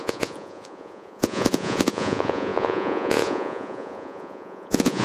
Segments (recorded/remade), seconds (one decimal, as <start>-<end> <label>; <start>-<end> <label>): 0.0-5.0 remade